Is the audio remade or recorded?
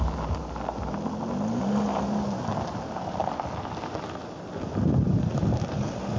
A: recorded